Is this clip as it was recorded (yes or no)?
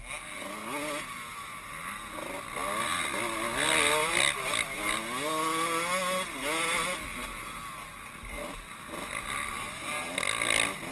yes